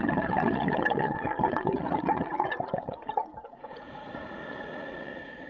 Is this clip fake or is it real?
fake